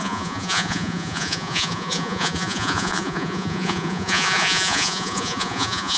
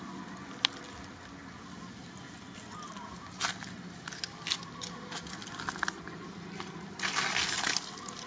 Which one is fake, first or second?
first